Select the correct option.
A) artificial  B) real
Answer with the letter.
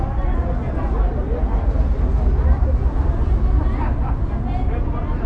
B